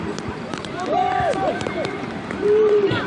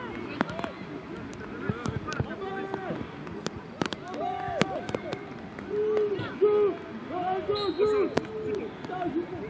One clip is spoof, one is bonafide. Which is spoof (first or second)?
first